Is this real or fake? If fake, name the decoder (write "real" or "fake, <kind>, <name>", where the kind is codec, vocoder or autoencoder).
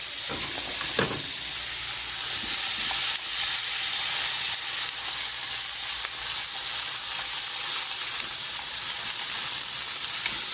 fake, vocoder, BigVGAN v2